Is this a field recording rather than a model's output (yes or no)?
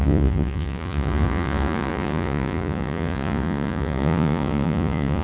no